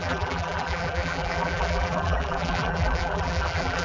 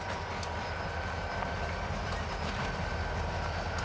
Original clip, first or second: second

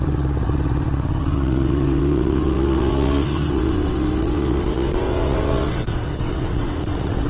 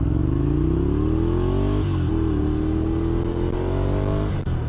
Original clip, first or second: second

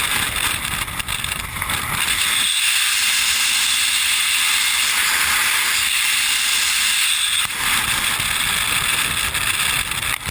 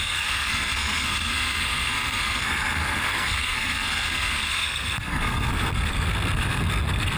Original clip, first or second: first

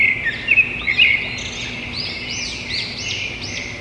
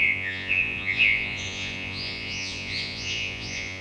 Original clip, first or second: first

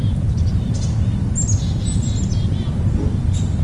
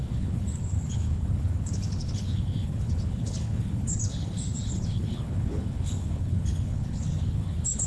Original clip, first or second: first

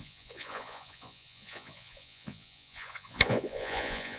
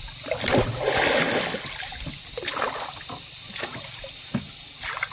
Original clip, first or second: second